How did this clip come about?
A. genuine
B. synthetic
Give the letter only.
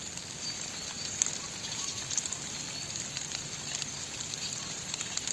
B